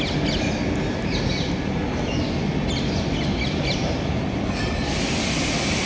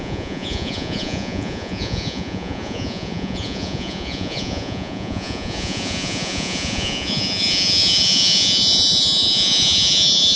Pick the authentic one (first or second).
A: first